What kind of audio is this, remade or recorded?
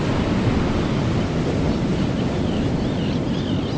recorded